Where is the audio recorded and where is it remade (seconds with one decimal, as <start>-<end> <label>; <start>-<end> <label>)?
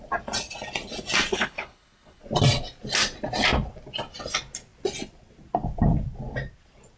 0.0-1.3 recorded; 1.3-2.2 remade; 2.2-7.0 recorded